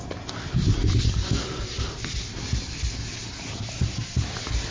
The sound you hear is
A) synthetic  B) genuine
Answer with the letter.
B